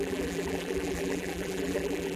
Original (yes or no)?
no